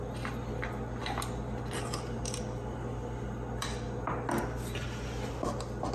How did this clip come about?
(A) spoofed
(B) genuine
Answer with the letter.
B